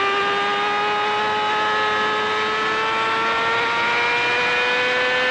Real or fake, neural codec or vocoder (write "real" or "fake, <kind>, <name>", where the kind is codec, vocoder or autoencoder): real